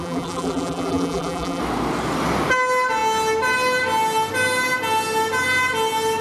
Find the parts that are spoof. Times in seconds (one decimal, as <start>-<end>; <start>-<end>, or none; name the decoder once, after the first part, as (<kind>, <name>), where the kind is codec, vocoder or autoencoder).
0.0-1.6 (vocoder, BigVGAN v2)